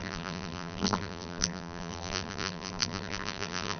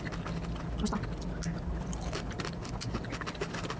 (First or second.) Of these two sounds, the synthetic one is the first